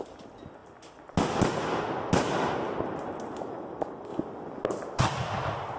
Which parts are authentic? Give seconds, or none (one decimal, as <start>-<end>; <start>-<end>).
0.0-5.8